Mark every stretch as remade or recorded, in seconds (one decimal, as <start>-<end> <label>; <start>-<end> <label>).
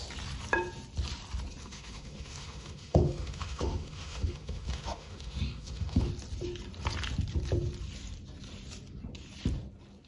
0.0-1.6 recorded; 1.6-6.1 remade; 6.1-10.1 recorded